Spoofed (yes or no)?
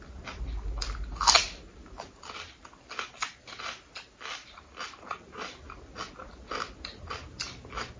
no